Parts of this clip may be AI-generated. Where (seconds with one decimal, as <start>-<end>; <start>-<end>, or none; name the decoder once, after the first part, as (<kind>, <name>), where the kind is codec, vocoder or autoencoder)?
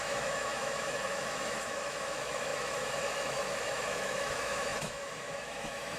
0.0-6.0 (autoencoder, DAC-VAE)